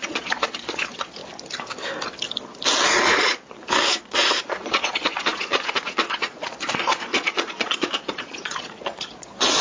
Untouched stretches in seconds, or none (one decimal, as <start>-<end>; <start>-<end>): 1.2-3.9